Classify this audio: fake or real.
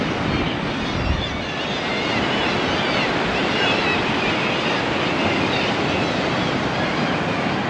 real